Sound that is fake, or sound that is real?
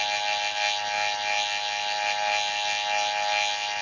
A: real